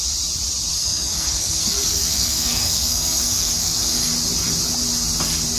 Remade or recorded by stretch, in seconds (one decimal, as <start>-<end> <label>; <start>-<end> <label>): 0.0-0.7 recorded; 0.7-4.1 remade; 4.1-5.6 recorded